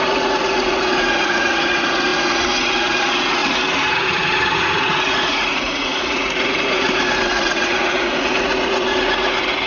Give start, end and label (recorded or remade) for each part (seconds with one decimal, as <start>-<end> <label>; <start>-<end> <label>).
0.0-3.4 remade; 3.4-3.9 recorded; 3.9-9.7 remade